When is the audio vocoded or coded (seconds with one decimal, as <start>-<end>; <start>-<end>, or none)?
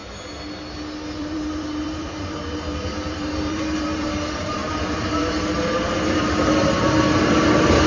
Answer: 1.2-7.9